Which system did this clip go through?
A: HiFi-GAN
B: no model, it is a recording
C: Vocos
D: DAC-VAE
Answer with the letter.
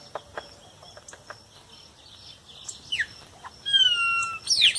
B